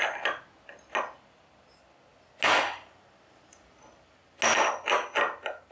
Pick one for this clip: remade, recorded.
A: recorded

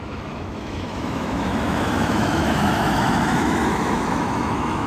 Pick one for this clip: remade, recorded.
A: remade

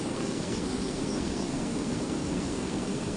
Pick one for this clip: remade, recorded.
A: remade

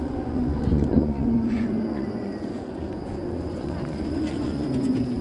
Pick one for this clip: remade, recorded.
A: remade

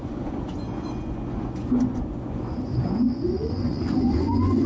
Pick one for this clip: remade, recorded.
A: remade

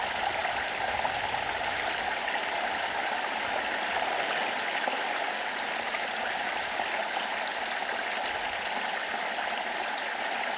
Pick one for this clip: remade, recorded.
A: recorded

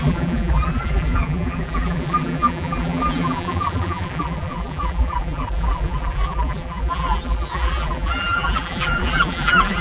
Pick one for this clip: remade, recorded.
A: remade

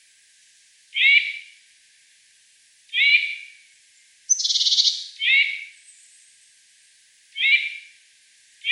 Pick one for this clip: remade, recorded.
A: recorded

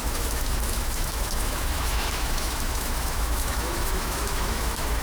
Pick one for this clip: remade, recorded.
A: remade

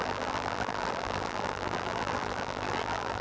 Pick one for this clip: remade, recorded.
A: remade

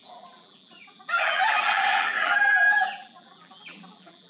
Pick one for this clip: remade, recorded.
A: remade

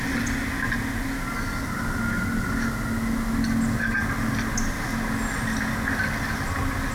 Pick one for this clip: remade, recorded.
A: recorded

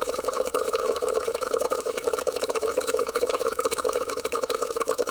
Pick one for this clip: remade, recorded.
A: remade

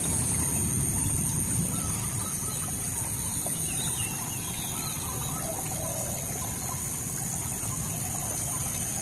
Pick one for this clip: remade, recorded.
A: recorded